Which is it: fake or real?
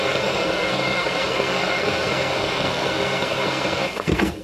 fake